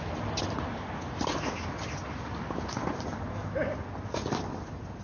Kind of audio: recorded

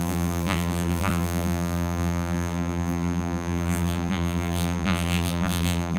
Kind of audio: remade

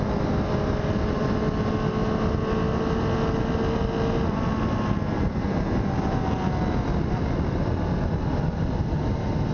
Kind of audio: recorded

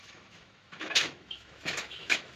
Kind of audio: remade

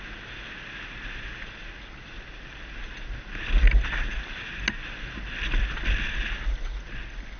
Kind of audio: recorded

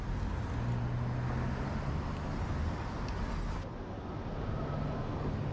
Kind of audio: recorded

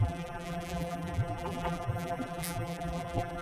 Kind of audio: remade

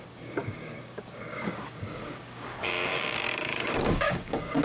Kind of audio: remade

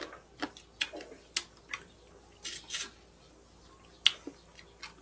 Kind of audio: recorded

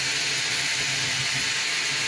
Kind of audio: recorded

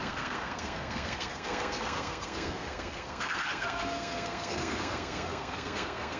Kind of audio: remade